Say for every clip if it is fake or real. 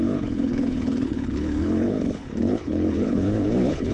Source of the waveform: fake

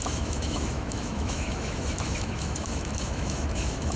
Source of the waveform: fake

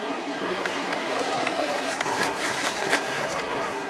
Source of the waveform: fake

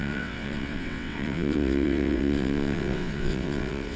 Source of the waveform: fake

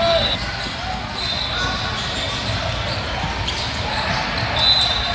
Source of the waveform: real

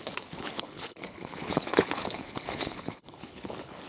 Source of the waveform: fake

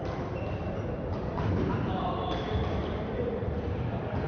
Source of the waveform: fake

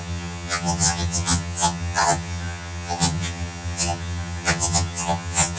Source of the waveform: fake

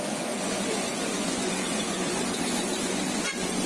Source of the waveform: fake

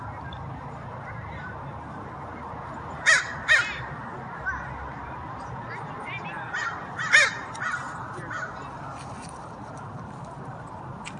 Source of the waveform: fake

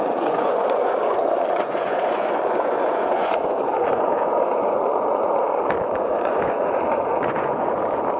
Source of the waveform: fake